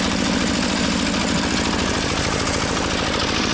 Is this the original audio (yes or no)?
yes